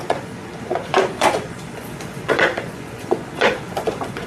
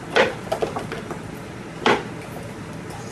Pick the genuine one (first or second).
second